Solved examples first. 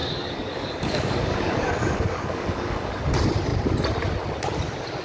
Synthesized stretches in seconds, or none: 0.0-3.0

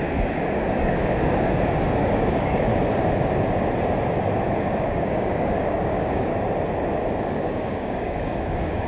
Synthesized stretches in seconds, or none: 0.0-2.7; 4.6-6.3; 7.3-8.9

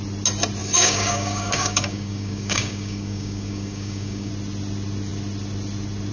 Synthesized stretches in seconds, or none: 0.6-4.3